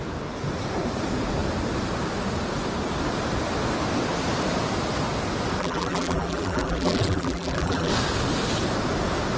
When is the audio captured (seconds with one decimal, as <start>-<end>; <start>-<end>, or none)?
0.0-5.6; 7.9-9.4